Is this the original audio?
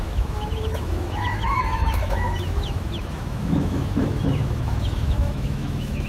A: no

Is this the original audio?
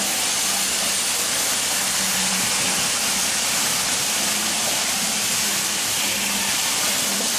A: yes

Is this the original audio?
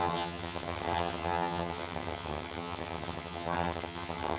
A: no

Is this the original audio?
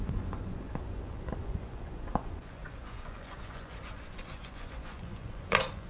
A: no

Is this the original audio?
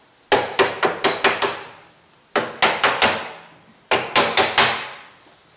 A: yes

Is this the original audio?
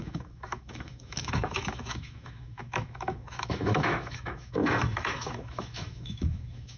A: no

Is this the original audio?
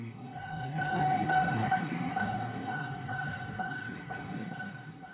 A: no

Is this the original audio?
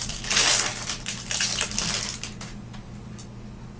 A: yes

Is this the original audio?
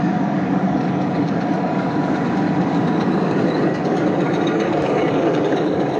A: no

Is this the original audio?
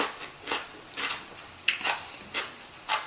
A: yes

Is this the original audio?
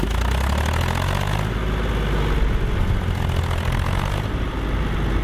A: yes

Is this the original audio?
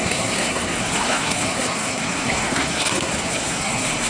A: no